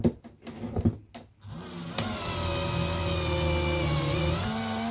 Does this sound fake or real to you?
real